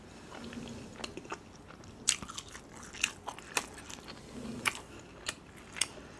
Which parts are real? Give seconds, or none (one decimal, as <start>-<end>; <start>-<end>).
0.0-6.2